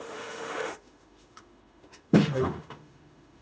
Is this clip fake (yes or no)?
yes